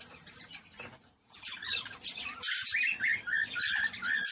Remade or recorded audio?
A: recorded